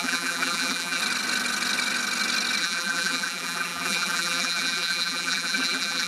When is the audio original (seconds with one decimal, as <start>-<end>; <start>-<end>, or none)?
1.0-2.6